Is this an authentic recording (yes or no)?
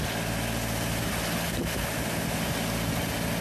yes